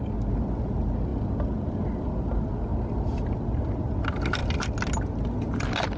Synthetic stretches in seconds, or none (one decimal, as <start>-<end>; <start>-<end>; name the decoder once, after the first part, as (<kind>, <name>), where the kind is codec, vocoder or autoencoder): none